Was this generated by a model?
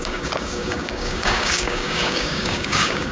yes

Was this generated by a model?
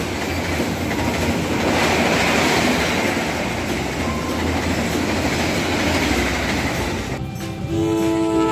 no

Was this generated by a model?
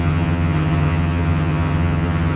yes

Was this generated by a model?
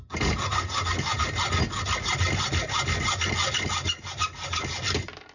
no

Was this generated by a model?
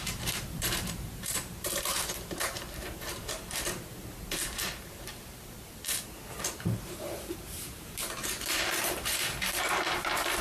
yes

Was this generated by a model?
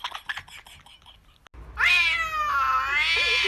no